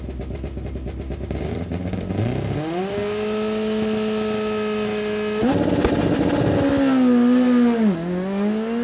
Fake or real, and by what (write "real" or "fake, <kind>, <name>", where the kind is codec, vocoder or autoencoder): real